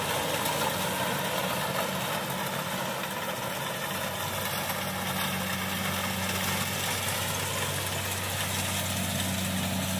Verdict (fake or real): real